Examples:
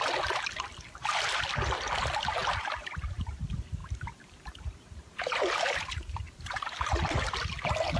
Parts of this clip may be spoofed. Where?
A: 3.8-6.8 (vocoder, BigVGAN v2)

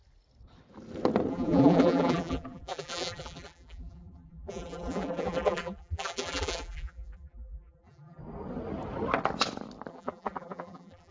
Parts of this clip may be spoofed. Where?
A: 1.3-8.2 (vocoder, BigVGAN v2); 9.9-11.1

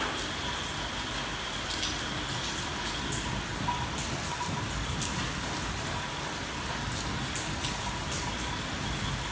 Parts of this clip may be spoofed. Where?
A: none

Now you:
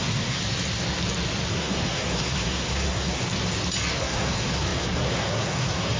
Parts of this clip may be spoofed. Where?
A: 0.0-0.4 (codec, SNAC); 1.5-3.2; 3.9-6.0

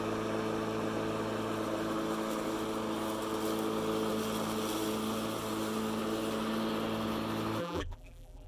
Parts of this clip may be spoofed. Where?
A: 7.6-8.5 (vocoder, BigVGAN v2)